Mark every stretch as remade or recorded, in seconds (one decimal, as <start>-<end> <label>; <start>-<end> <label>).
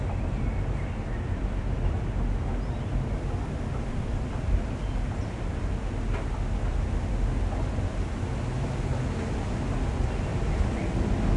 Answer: 0.0-11.4 recorded